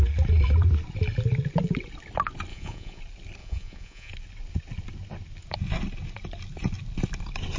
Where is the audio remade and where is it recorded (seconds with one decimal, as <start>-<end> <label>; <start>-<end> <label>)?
0.0-2.5 recorded; 2.5-3.0 remade; 3.0-3.4 recorded; 3.4-4.1 remade; 4.1-7.6 recorded